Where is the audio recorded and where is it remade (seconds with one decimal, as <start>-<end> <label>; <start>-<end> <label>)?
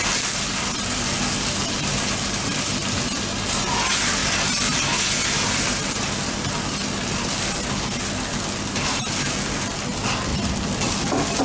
0.0-10.3 recorded; 10.3-11.4 remade